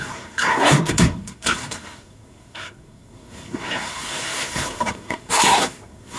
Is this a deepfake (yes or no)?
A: yes